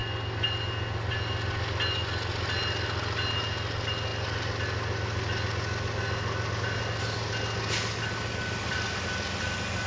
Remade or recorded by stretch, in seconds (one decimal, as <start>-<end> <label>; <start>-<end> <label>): 0.0-9.9 recorded

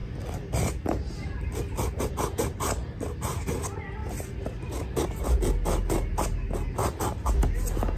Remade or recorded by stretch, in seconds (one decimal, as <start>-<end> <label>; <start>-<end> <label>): 0.0-8.0 recorded